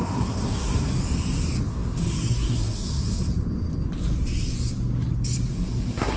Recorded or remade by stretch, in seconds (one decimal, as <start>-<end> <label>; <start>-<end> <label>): 0.0-0.9 remade; 0.9-1.7 recorded; 1.7-3.3 remade; 3.3-5.5 recorded; 5.5-6.2 remade